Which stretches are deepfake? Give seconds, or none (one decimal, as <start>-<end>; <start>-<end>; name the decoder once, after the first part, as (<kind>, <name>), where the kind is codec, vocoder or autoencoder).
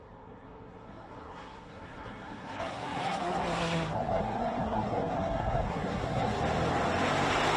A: 0.0-6.4 (codec, SNAC)